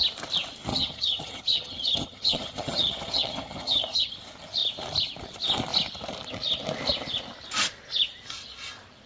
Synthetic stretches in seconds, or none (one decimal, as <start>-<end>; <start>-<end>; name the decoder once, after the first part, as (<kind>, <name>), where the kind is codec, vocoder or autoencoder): 0.7-4.1 (vocoder, HiFi-GAN)